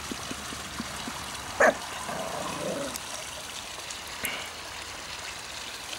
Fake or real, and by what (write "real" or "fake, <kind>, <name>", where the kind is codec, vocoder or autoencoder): real